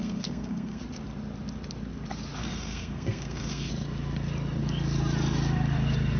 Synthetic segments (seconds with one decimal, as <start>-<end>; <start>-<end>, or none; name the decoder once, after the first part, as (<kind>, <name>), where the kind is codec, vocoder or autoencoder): 0.0-0.8 (codec, SNAC); 2.4-3.7